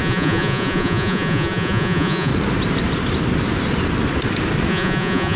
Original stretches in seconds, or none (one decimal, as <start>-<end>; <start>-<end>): 2.3-4.7

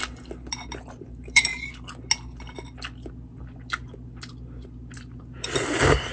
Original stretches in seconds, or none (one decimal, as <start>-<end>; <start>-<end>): 0.0-0.9; 1.5-5.2

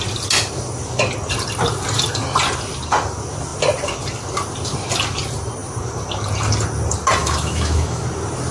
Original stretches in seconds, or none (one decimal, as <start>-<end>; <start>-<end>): 0.0-7.2; 8.0-8.5

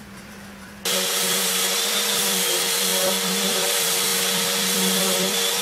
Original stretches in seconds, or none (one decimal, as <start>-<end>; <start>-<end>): none